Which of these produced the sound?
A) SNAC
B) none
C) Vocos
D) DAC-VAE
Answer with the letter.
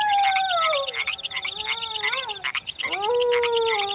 B